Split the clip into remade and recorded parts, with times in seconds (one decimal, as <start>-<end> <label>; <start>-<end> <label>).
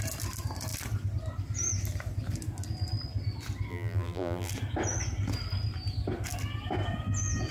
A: 0.0-3.7 recorded; 3.7-4.5 remade; 4.5-7.5 recorded